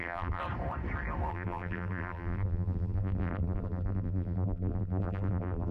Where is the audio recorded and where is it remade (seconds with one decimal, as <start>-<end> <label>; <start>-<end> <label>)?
0.0-0.4 remade; 0.4-1.3 recorded; 1.3-5.7 remade